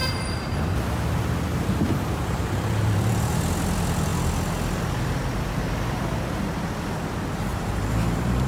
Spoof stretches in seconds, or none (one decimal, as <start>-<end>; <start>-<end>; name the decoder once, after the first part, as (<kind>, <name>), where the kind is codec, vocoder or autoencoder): 0.0-0.6 (vocoder, BigVGAN v2); 1.5-3.4; 7.5-8.5